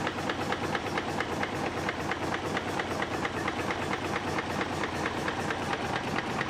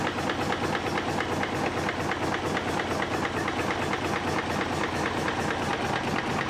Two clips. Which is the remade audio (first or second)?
first